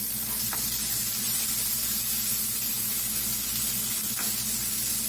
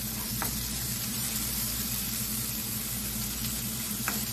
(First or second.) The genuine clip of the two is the first